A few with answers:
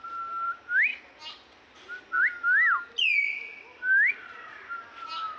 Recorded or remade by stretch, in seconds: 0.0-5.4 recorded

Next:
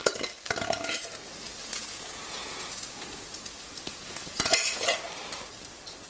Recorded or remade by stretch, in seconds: 0.0-1.6 recorded; 1.6-4.8 remade; 4.8-6.1 recorded

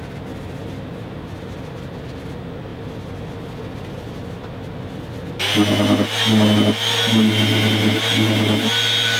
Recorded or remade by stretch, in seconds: 0.0-0.6 recorded; 0.6-2.3 remade; 2.3-2.7 recorded; 2.7-5.4 remade; 5.4-9.2 recorded

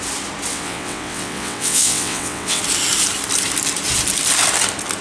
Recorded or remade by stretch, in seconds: 0.0-0.5 recorded; 0.5-2.6 remade; 2.6-5.0 recorded

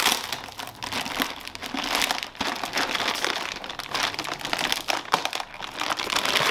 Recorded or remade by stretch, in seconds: 0.0-6.5 recorded

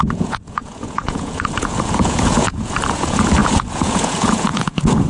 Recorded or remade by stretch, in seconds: 0.0-5.1 remade